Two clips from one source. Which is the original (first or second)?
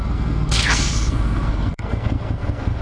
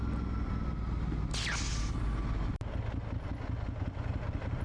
second